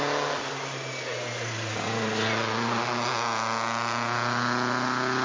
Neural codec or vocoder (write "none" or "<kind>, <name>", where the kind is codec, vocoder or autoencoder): none